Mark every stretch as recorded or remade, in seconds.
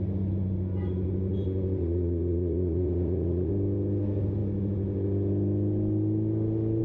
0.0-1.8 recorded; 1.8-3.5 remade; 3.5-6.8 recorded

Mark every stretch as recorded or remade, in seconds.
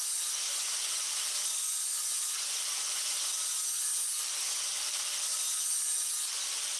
0.0-3.3 remade; 3.3-4.3 recorded; 4.3-4.7 remade; 4.7-6.8 recorded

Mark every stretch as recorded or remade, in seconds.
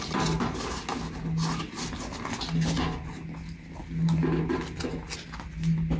0.0-6.0 recorded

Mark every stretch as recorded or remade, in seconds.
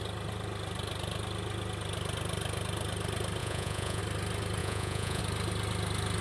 0.0-3.4 recorded; 3.4-4.0 remade; 4.0-4.6 recorded; 4.6-5.2 remade; 5.2-6.2 recorded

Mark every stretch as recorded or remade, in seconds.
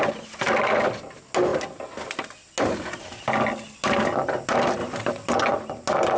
0.0-6.2 recorded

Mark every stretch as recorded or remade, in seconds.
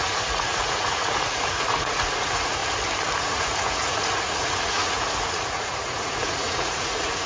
0.0-2.6 remade; 2.6-3.2 recorded; 3.2-7.3 remade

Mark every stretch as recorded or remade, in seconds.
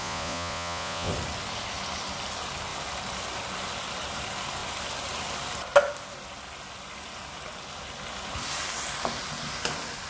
0.0-1.1 remade; 1.1-10.1 recorded